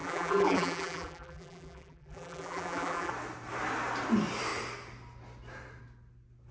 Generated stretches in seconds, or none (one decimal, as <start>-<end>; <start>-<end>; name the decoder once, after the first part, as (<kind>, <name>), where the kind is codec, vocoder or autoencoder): 0.0-3.1 (vocoder, BigVGAN v2)